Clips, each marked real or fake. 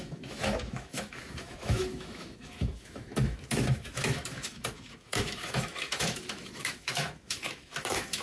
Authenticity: fake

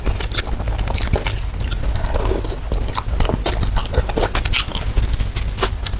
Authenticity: real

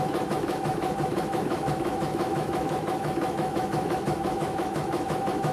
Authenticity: fake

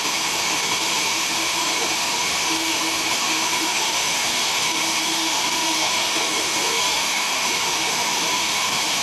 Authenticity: fake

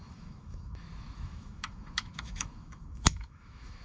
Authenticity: fake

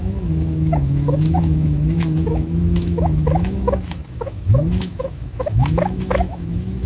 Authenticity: fake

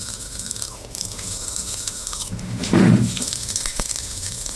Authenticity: fake